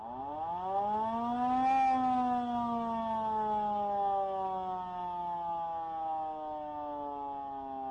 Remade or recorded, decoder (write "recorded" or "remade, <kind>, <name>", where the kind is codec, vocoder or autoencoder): recorded